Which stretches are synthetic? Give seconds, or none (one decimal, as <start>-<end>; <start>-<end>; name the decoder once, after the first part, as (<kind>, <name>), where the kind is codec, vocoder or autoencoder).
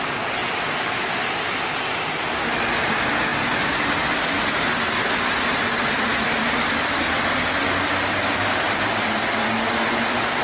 none